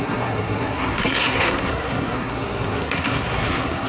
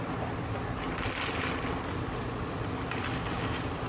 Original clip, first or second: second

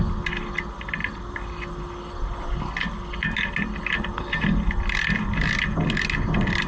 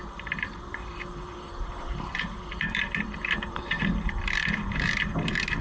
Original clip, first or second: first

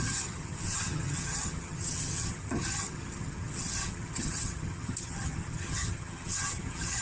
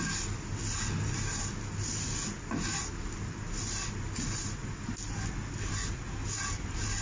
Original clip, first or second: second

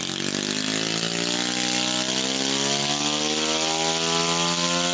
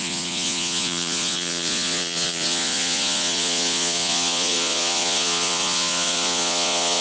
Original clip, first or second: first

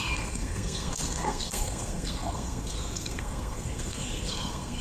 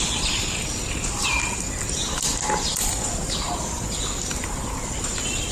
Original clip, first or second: second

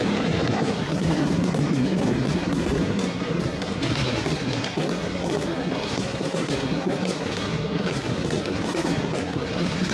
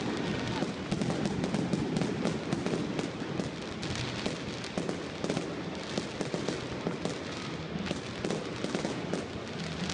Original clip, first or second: second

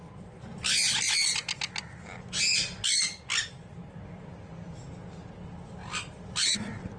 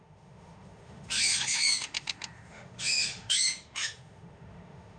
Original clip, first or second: first